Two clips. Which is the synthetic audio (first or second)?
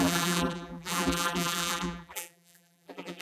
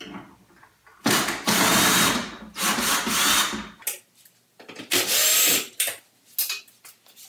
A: first